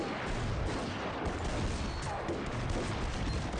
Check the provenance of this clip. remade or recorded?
recorded